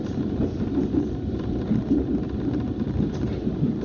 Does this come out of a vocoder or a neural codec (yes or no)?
no